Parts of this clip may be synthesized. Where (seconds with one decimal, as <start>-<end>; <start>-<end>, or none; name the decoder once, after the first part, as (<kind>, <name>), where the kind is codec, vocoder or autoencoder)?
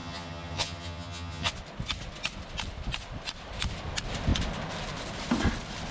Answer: 0.0-1.5 (vocoder, HiFi-GAN)